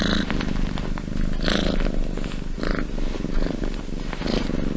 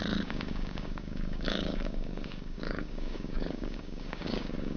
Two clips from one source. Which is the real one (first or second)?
first